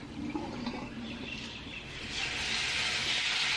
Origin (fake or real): fake